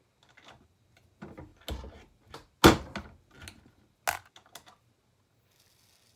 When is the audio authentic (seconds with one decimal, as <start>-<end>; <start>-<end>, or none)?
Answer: 0.0-6.2